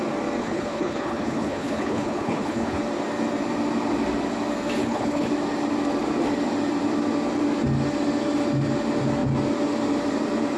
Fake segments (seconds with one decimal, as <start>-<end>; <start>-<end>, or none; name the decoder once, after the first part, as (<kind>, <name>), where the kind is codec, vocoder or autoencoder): 0.4-2.8 (codec, HILCodec); 4.8-5.3